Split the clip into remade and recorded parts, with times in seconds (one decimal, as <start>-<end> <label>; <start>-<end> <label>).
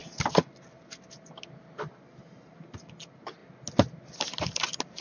0.0-5.0 recorded